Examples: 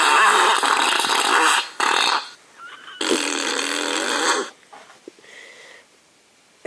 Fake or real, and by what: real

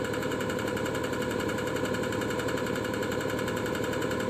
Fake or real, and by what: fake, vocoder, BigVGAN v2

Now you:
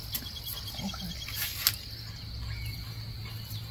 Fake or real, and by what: real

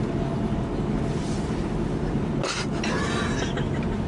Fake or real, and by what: real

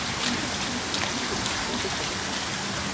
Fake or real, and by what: real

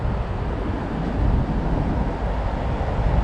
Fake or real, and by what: real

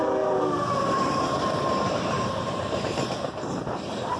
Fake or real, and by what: fake, vocoder, BigVGAN v2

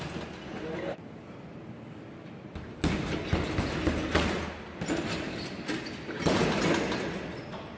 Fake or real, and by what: real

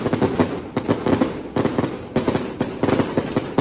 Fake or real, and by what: real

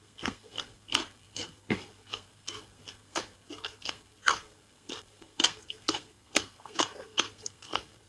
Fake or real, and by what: fake, codec, SNAC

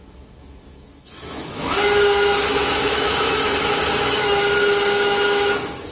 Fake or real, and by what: fake, autoencoder, DAC-VAE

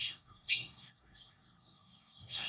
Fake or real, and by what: fake, codec, SNAC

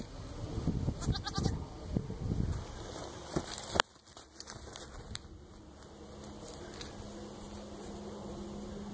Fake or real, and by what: real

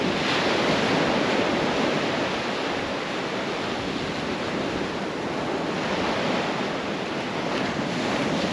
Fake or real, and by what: real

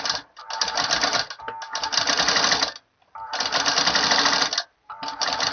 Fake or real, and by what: real